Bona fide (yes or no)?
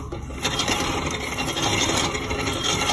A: yes